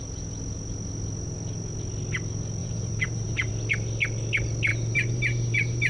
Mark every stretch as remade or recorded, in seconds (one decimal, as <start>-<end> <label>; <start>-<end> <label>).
0.0-2.6 recorded; 2.6-3.5 remade; 3.5-4.7 recorded; 4.7-5.9 remade